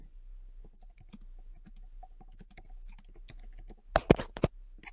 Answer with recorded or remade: recorded